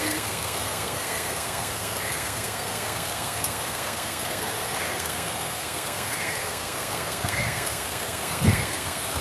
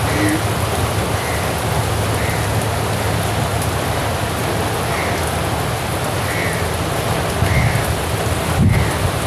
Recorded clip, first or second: second